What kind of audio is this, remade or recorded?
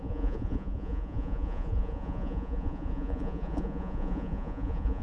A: remade